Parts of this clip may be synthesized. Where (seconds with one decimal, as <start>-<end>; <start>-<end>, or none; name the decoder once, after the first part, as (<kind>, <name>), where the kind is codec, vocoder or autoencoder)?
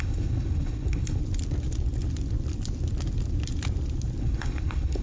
0.0-1.2 (codec, HILCodec); 4.2-5.0